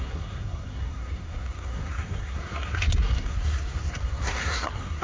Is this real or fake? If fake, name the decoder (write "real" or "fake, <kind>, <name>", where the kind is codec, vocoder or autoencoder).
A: fake, codec, SNAC